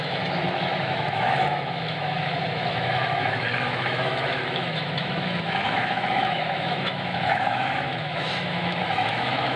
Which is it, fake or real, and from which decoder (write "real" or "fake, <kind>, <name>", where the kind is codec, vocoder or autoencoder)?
fake, autoencoder, DAC-VAE